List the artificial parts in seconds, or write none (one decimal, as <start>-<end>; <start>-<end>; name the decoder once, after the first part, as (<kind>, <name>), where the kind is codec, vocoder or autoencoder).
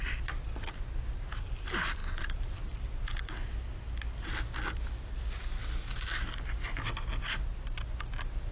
2.0-2.9 (vocoder, BigVGAN v2)